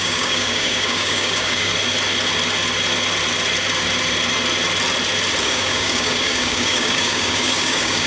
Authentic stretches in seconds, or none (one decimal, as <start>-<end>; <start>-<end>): 1.7-5.4

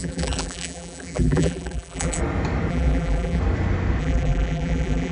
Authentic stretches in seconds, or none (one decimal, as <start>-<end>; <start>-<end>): 2.2-2.7; 3.4-4.0

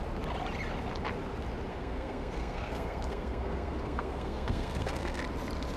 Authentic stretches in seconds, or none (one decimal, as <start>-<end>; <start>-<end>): 0.0-1.7; 5.2-5.8

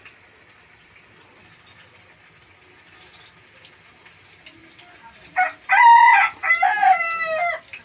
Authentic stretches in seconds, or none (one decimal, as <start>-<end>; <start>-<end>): 0.0-7.8

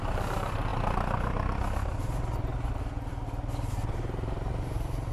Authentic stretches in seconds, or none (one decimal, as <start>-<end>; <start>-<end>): 0.7-3.7

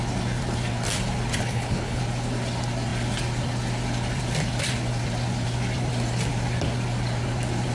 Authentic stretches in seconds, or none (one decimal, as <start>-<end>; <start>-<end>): 0.0-1.4; 2.0-7.7

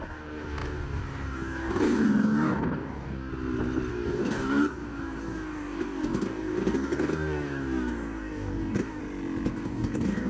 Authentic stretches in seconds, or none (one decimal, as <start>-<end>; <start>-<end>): 3.3-3.9; 9.0-9.5

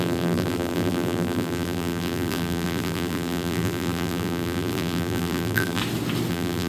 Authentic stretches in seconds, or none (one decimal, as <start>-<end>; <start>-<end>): 5.8-6.3